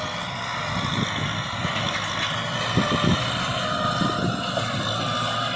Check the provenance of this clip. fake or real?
real